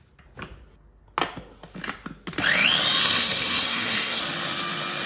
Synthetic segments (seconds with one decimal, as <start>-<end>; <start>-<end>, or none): 3.0-4.2

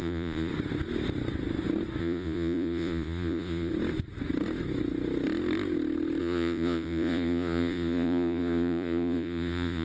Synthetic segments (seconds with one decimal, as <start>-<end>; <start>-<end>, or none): 0.0-0.5; 2.0-3.7; 6.2-9.8

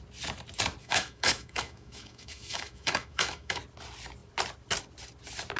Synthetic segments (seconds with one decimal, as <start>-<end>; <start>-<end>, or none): 0.8-3.6

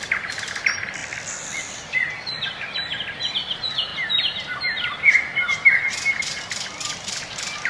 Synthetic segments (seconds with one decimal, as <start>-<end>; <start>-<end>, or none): 0.0-3.9; 6.2-7.7

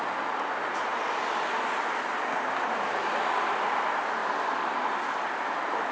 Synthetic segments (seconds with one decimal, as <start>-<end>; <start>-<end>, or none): none

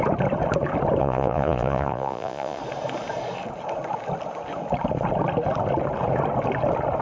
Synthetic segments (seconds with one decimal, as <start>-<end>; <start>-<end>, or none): 1.0-2.6

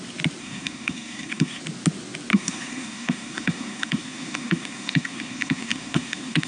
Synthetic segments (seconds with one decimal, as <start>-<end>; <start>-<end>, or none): 0.4-1.6; 2.3-6.5